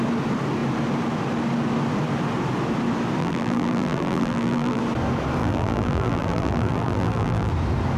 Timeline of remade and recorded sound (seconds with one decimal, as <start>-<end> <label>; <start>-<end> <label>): 0.0-3.2 recorded; 3.2-4.8 remade; 4.8-5.4 recorded; 5.4-7.5 remade; 7.5-8.0 recorded